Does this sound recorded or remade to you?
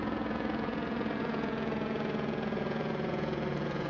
remade